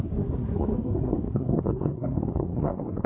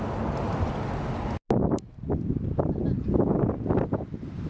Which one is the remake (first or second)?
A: first